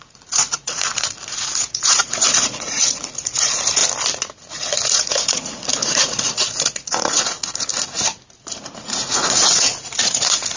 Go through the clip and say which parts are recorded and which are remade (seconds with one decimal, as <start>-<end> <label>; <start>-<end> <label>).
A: 0.0-3.8 remade; 3.8-4.5 recorded; 4.5-7.7 remade; 7.7-8.8 recorded; 8.8-10.6 remade